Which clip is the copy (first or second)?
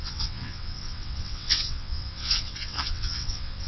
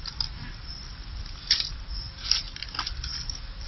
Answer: first